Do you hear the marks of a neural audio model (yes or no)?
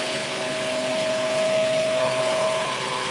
yes